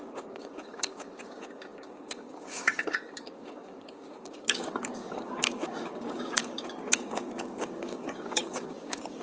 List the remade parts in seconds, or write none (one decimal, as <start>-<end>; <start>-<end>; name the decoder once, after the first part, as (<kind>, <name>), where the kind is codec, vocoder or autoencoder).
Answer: 0.0-9.2 (codec, DAC)